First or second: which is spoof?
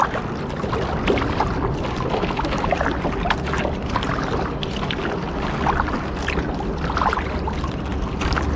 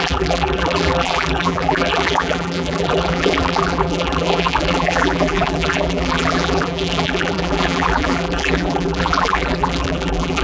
second